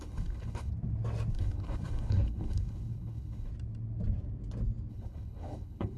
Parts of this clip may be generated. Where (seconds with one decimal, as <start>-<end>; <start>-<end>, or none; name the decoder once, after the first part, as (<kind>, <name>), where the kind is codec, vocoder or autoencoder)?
0.0-0.7 (codec, HILCodec); 1.3-3.5; 4.9-6.0